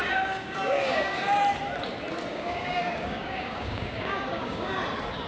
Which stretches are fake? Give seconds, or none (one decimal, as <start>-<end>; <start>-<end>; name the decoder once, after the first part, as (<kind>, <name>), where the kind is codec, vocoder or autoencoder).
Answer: 0.0-1.4 (codec, DAC); 2.3-4.8